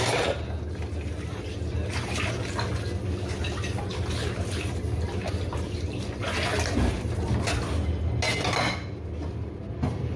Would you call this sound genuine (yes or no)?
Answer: yes